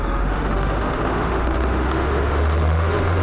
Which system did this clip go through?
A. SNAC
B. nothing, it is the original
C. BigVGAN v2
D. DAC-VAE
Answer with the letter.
D